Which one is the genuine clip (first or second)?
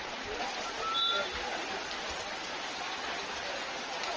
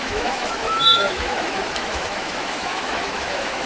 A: first